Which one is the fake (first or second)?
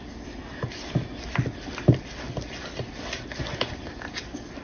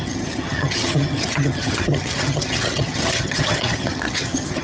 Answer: second